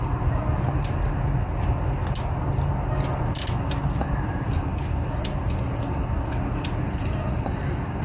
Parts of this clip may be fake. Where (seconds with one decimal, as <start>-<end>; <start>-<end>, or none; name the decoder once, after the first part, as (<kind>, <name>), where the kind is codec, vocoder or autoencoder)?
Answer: none